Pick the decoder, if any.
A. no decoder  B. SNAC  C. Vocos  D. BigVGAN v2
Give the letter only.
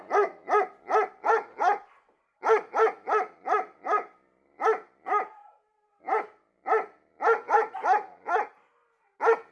A